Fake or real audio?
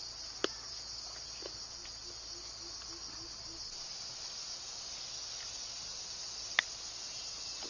real